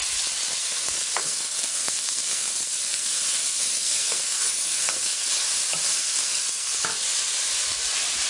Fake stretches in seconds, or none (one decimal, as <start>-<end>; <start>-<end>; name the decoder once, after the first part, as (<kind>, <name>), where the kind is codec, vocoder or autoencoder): 0.6-5.3 (codec, SNAC); 5.9-6.8